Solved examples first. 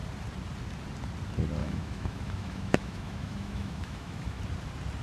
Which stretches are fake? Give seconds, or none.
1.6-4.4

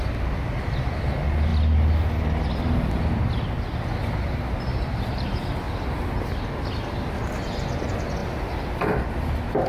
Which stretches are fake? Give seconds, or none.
none

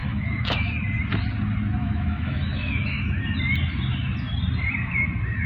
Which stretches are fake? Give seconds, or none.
0.0-0.7; 1.8-3.0